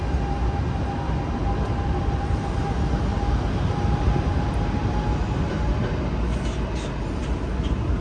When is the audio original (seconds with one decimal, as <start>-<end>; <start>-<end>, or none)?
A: 0.0-8.0